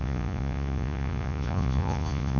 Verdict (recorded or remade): remade